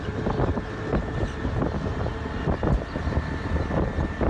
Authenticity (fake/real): real